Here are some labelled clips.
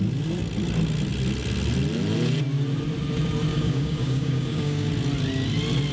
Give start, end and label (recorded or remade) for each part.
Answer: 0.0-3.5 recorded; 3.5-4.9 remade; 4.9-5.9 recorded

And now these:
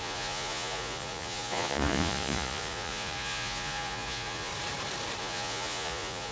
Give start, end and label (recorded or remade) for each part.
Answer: 0.0-4.5 remade; 4.5-5.2 recorded; 5.2-6.3 remade

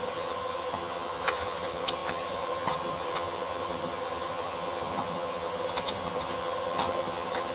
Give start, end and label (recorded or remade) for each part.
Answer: 0.0-7.5 remade

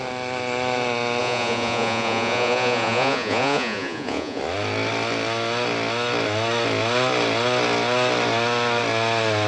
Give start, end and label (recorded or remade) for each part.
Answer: 0.0-1.2 recorded; 1.2-4.4 remade; 4.4-9.5 recorded

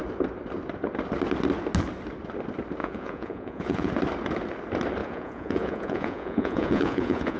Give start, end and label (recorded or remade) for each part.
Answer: 0.0-2.8 recorded; 2.8-3.9 remade; 3.9-5.0 recorded; 5.0-7.4 remade

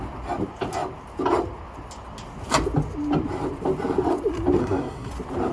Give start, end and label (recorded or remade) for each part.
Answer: 0.0-4.6 recorded; 4.6-5.1 remade; 5.1-5.5 recorded

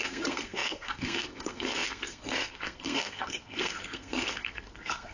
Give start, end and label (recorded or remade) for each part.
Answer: 0.0-5.1 remade